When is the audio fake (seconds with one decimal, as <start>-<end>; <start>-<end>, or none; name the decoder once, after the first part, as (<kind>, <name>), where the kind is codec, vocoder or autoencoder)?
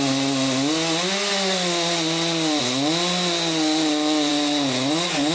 none